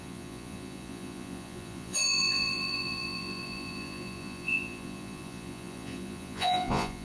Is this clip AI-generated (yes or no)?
yes